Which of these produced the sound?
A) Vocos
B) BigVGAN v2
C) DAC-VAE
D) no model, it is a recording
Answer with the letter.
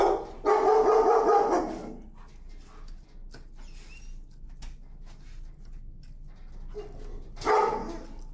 D